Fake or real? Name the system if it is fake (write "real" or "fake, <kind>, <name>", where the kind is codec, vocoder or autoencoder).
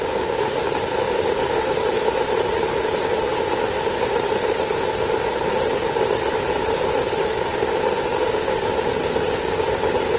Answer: real